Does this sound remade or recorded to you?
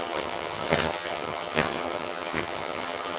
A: remade